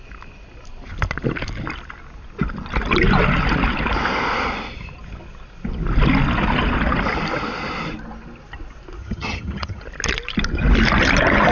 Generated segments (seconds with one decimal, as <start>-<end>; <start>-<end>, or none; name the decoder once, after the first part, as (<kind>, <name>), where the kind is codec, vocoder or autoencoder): 9.0-9.8 (vocoder, HiFi-GAN)